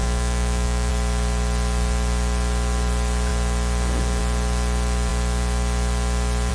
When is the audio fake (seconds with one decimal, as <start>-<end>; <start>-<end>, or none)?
0.0-0.9